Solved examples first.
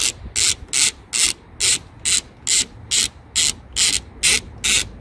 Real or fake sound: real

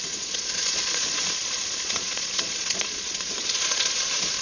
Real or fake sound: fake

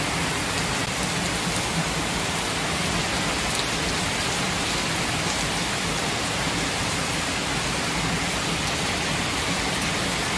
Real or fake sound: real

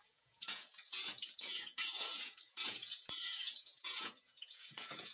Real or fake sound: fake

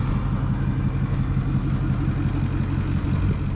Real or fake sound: real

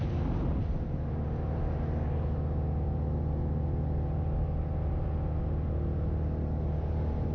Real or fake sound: real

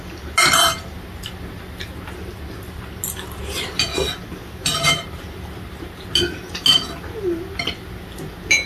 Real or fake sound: real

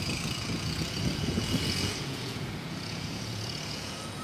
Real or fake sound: fake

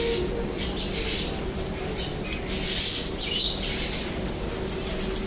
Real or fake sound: real